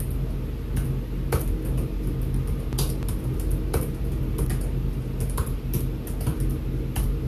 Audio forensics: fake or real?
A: real